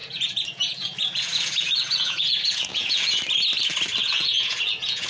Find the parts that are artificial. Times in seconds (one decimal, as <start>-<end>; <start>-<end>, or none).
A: 0.0-3.1; 4.0-5.1